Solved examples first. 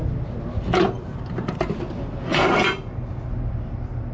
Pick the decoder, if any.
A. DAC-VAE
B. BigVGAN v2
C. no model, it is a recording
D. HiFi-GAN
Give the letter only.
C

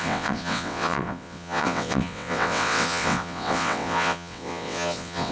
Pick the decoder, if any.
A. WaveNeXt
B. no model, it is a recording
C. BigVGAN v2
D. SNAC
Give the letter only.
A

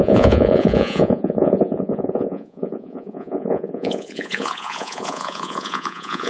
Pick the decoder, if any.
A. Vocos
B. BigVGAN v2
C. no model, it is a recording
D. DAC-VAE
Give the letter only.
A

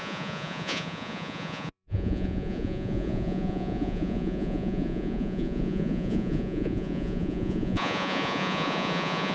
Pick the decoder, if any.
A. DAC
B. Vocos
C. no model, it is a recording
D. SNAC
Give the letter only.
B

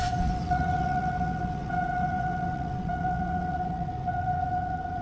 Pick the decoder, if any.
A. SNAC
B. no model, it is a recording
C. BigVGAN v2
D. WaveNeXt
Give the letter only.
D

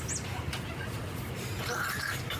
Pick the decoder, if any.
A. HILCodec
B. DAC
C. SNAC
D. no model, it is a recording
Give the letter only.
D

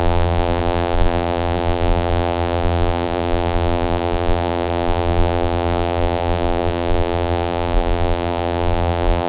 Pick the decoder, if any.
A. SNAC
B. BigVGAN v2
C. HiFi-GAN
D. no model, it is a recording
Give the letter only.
B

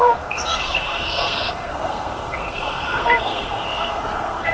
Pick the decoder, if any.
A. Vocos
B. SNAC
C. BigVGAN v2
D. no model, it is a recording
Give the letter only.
B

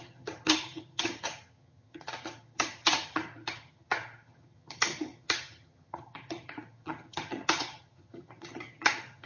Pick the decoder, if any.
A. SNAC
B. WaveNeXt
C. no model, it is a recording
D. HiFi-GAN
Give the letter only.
D